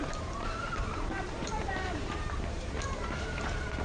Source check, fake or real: fake